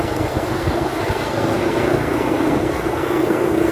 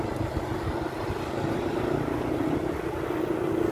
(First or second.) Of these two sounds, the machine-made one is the first